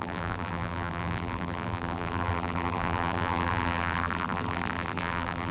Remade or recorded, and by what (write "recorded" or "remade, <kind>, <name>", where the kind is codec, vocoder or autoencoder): remade, vocoder, BigVGAN v2